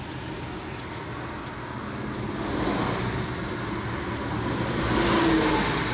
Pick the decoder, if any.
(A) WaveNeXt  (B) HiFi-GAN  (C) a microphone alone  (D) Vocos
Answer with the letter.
C